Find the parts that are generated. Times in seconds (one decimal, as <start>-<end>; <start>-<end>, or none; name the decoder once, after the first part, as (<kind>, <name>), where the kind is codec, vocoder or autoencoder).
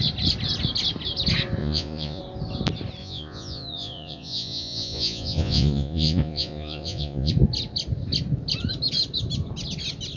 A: 1.6-2.2 (vocoder, Vocos); 3.0-7.3